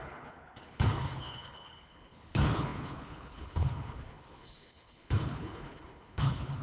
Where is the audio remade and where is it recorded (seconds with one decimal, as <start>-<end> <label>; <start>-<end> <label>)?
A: 0.0-6.6 remade